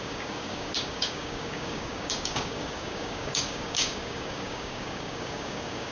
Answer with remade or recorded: remade